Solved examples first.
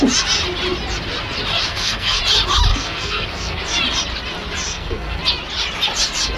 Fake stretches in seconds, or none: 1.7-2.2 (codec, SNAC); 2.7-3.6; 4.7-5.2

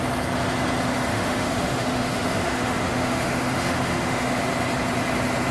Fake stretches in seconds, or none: 1.1-4.4 (autoencoder, DAC-VAE)

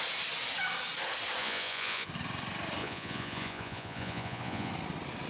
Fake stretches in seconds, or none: 1.4-2.1 (vocoder, Vocos); 2.8-4.7

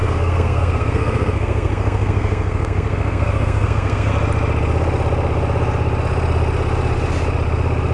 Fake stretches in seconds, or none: 0.0-4.1 (codec, SNAC)

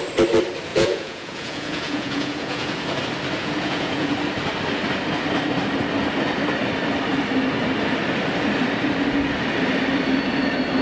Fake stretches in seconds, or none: 0.7-3.0 (vocoder, Vocos); 3.4-4.1

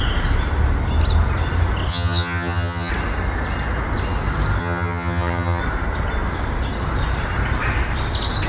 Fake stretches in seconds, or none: 1.9-2.9 (vocoder, HiFi-GAN); 4.6-5.6